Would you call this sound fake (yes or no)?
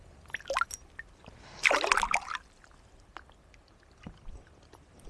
no